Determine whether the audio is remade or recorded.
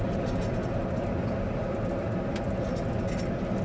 recorded